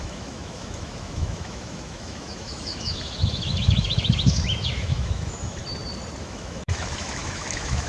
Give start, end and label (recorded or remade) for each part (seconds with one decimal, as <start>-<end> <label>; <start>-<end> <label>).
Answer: 0.0-5.6 remade; 5.6-6.2 recorded; 6.2-7.9 remade